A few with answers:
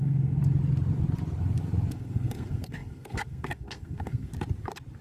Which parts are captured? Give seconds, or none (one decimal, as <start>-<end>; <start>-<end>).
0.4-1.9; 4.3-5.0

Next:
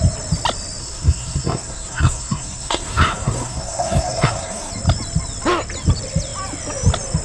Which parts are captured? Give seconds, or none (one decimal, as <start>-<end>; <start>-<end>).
0.0-0.8; 4.7-7.2

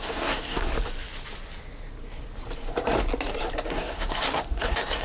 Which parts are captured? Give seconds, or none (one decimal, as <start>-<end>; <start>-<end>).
0.7-3.7